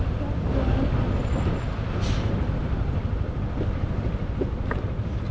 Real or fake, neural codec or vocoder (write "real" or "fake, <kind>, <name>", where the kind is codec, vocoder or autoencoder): real